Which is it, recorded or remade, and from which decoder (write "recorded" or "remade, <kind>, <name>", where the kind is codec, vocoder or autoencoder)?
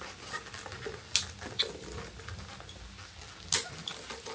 recorded